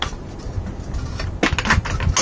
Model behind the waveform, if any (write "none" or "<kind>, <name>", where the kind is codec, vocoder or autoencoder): none